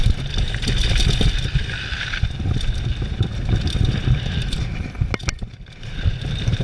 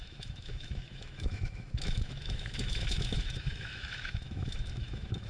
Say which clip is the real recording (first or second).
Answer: first